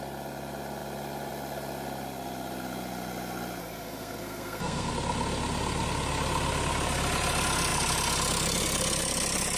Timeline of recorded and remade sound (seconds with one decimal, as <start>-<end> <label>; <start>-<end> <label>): 0.0-3.6 recorded; 3.6-4.9 remade; 4.9-9.6 recorded